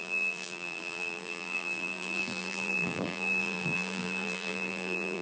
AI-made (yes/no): yes